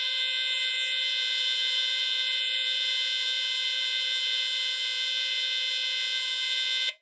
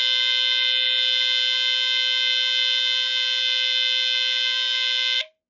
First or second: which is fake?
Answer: first